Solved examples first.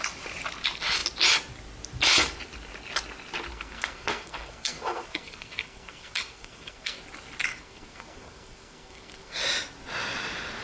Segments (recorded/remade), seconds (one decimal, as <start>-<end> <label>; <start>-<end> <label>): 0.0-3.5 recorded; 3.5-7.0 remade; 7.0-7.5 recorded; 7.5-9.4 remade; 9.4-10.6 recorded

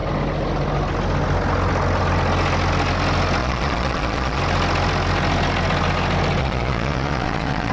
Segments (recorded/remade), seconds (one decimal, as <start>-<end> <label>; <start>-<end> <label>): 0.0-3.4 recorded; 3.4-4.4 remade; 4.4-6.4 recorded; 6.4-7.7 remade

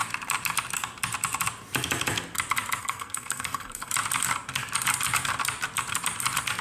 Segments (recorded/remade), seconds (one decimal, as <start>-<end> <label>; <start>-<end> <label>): 0.0-2.8 recorded; 2.8-3.9 remade; 3.9-6.6 recorded

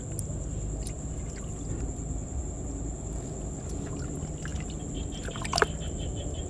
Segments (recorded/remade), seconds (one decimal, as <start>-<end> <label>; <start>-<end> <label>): 0.0-6.5 recorded

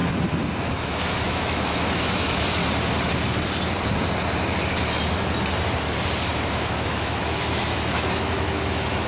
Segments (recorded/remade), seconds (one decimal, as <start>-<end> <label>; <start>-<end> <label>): 0.0-0.6 recorded; 0.6-2.6 remade; 2.6-6.5 recorded; 6.5-9.1 remade

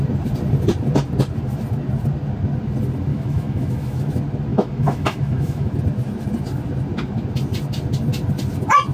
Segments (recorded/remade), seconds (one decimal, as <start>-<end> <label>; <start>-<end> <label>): 0.0-3.1 recorded; 3.1-4.1 remade; 4.1-4.5 recorded; 4.5-5.7 remade; 5.7-8.9 recorded

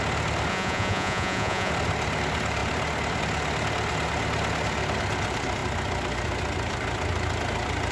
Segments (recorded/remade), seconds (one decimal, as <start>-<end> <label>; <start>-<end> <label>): 0.0-0.5 recorded; 0.5-1.7 remade; 1.7-7.9 recorded

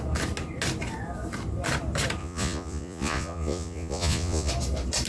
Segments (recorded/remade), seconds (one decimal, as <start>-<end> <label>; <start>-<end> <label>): 0.0-2.2 recorded; 2.2-4.5 remade; 4.5-5.1 recorded